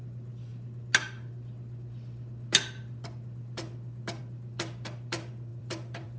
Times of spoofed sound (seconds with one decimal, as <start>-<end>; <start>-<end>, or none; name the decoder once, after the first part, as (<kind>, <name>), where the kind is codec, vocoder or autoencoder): 5.5-6.2 (vocoder, BigVGAN v2)